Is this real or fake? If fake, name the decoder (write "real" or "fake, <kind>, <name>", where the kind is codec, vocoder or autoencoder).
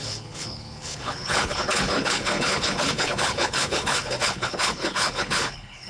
fake, codec, HILCodec